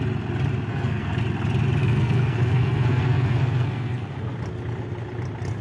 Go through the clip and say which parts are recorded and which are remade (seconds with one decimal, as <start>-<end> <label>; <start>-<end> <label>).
0.0-0.7 recorded; 0.7-1.2 remade; 1.2-1.8 recorded; 1.8-4.1 remade; 4.1-5.6 recorded